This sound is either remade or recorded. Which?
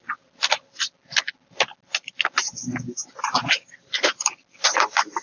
recorded